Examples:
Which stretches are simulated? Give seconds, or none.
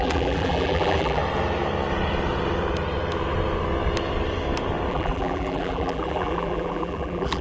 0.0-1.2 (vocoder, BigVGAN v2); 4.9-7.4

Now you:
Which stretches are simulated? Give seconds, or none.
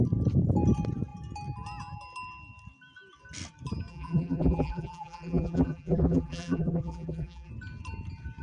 3.9-7.5 (vocoder, BigVGAN v2)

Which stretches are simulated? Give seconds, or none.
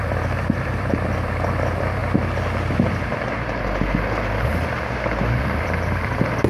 0.0-2.0 (vocoder, BigVGAN v2); 5.4-6.5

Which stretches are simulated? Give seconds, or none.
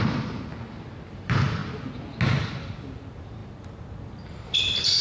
0.0-0.5 (vocoder, BigVGAN v2); 1.1-1.6; 2.4-5.0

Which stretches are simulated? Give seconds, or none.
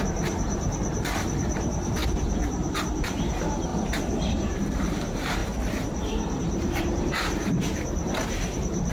0.0-3.7 (vocoder, BigVGAN v2); 4.3-5.4; 6.4-8.9